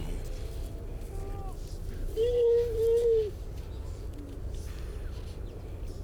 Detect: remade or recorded recorded